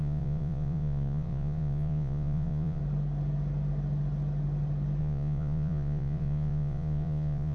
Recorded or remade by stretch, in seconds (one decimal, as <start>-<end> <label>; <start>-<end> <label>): 0.0-2.8 remade; 2.8-5.0 recorded; 5.0-7.5 remade

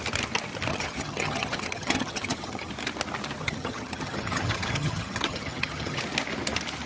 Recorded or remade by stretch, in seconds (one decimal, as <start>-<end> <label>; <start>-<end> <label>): 0.0-0.7 recorded; 0.7-2.7 remade; 2.7-3.4 recorded; 3.4-6.0 remade; 6.0-6.9 recorded

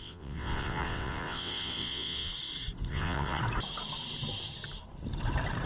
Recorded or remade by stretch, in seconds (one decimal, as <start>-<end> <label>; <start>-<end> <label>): 0.0-2.3 remade; 2.3-2.9 recorded; 2.9-3.4 remade; 3.4-5.7 recorded

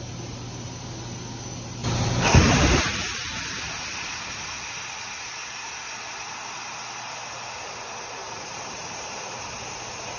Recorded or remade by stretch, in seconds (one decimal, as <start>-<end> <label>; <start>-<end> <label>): 0.0-1.8 recorded; 1.8-2.8 remade; 2.8-8.2 recorded; 8.2-9.6 remade; 9.6-10.2 recorded

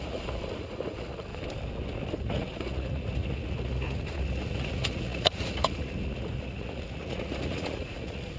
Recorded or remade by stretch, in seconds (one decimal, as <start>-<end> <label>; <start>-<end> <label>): 0.0-1.3 remade; 1.3-2.2 recorded; 2.2-8.4 remade